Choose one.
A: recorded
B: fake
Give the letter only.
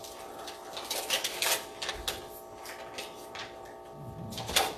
A